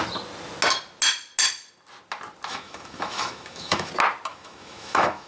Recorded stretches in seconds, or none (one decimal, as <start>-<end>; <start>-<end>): 0.0-2.5; 3.9-4.3